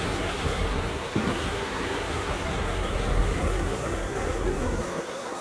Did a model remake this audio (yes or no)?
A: yes